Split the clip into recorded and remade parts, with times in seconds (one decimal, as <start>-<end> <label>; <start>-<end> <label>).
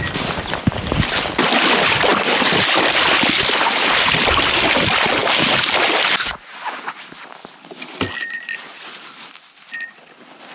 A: 0.0-10.5 recorded